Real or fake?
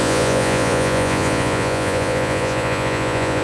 fake